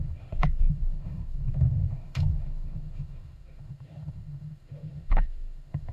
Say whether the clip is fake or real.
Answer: fake